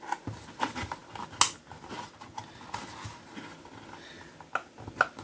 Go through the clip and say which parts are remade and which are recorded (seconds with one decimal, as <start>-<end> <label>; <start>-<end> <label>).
0.0-5.2 recorded